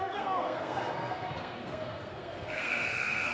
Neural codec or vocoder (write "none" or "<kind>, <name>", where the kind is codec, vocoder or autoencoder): codec, SNAC